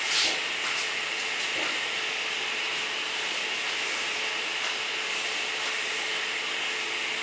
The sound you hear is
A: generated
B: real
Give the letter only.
B